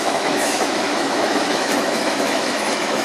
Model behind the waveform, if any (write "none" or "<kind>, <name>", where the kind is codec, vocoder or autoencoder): autoencoder, DAC-VAE